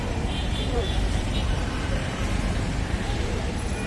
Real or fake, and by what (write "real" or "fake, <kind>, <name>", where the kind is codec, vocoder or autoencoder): fake, vocoder, BigVGAN v2